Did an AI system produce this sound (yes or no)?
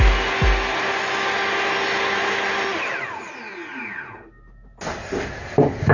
no